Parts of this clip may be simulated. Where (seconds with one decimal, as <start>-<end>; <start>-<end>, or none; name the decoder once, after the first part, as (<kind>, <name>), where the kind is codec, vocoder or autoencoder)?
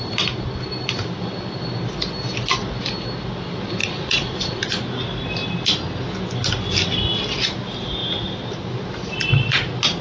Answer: 3.8-4.6 (vocoder, Vocos)